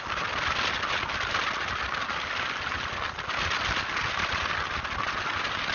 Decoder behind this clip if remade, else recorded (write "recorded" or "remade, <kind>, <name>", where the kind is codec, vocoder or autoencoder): recorded